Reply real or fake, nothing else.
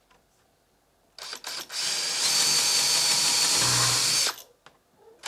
real